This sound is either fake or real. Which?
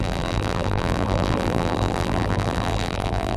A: fake